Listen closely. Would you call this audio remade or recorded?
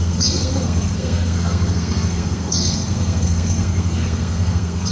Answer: remade